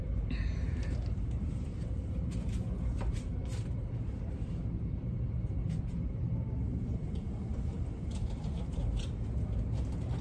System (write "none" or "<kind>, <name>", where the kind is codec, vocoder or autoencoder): vocoder, BigVGAN v2